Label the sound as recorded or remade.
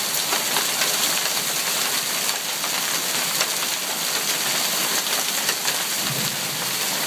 recorded